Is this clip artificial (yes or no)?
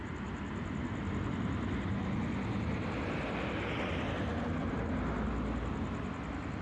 no